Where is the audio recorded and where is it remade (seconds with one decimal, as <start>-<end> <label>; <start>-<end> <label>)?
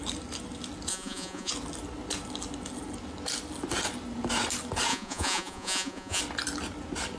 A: 0.0-0.9 recorded; 0.9-1.5 remade; 1.5-4.9 recorded; 4.9-6.2 remade; 6.2-7.2 recorded